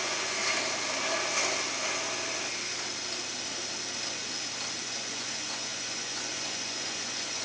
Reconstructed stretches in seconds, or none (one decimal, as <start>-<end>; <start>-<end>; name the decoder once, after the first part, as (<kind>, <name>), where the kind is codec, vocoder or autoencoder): 0.0-0.4 (vocoder, Vocos); 4.8-7.4